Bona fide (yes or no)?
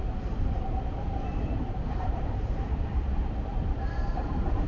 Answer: no